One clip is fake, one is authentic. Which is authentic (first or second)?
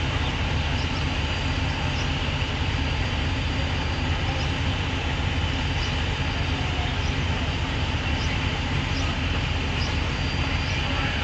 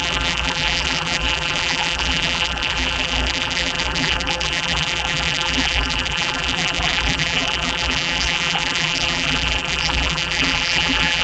first